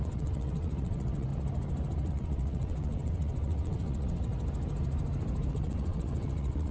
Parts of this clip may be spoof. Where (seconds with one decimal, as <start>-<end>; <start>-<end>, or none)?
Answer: 0.0-1.3; 2.1-4.3; 5.5-6.7

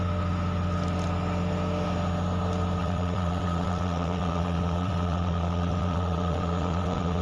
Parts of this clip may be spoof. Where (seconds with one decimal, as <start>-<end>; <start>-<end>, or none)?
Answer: 2.8-7.2